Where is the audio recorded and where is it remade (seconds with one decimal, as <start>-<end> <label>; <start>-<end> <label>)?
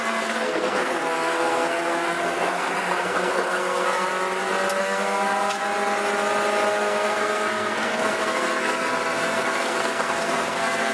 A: 0.0-4.1 remade; 4.1-4.8 recorded; 4.8-5.6 remade; 5.6-6.7 recorded; 6.7-10.9 remade